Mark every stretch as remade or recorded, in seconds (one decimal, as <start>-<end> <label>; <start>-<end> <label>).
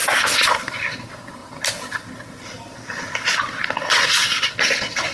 0.0-5.1 recorded